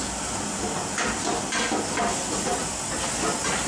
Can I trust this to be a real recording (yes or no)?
yes